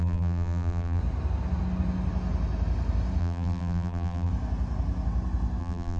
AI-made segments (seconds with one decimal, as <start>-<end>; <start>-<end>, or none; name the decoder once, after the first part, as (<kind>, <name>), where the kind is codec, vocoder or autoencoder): 0.0-1.0 (vocoder, BigVGAN v2); 3.2-4.3; 5.6-6.0